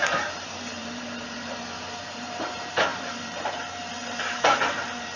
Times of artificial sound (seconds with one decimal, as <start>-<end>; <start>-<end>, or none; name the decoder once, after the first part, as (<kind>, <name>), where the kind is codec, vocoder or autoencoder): 0.0-5.2 (vocoder, BigVGAN v2)